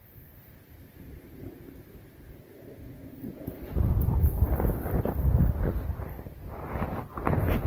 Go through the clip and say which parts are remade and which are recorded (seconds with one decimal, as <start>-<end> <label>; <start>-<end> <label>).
0.0-7.7 recorded